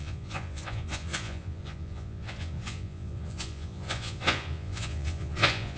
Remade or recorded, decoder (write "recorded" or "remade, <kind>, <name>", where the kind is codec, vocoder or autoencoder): remade, vocoder, Vocos